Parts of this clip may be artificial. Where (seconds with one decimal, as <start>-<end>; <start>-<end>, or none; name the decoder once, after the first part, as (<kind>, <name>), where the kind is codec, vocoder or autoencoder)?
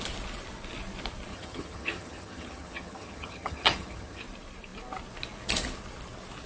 1.3-4.2 (vocoder, HiFi-GAN)